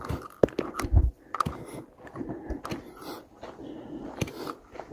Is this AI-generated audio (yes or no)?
no